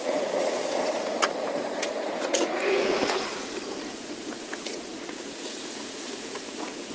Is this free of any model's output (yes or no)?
no